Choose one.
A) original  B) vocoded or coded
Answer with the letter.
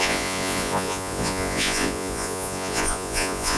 B